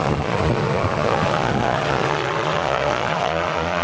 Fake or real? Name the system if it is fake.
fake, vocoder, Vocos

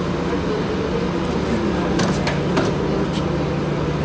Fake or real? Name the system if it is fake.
real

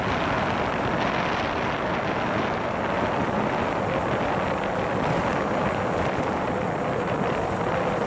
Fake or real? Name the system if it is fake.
real